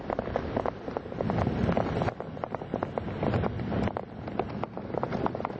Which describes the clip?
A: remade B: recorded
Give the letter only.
B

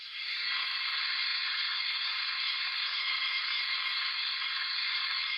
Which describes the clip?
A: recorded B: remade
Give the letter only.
B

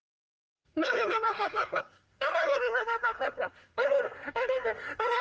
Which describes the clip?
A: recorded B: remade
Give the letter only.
B